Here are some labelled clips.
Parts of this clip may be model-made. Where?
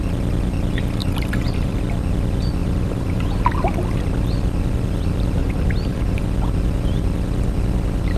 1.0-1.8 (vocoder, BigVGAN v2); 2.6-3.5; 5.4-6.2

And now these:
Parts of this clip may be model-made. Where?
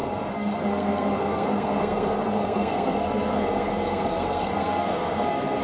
0.0-5.6 (codec, SNAC)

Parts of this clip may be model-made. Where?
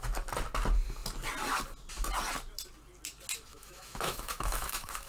3.5-5.1 (autoencoder, DAC-VAE)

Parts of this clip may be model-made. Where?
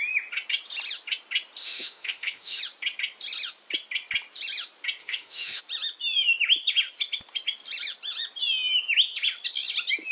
1.6-2.6 (autoencoder, DAC-VAE); 5.0-5.6